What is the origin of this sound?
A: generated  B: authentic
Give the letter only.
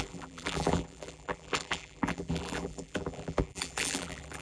A